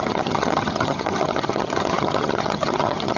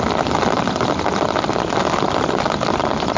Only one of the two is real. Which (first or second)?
second